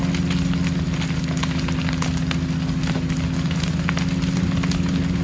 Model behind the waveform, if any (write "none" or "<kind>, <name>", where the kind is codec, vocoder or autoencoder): none